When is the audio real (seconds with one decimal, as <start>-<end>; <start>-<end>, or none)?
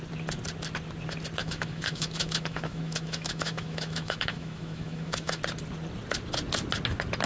0.0-1.4; 5.4-7.3